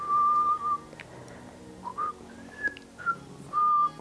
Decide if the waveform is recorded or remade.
recorded